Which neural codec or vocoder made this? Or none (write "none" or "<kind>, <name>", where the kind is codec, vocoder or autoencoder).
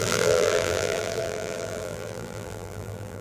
vocoder, BigVGAN v2